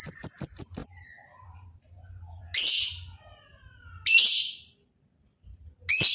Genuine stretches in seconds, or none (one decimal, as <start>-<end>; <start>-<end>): 0.0-0.8; 2.4-6.1